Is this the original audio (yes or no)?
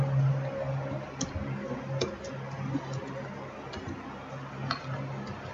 yes